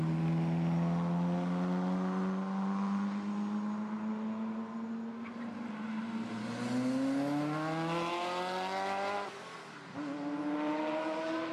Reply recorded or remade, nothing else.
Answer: recorded